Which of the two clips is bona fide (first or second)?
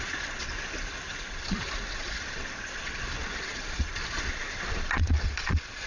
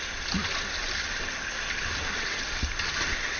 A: second